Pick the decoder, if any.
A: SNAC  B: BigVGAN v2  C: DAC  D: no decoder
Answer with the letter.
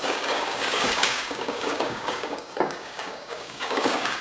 C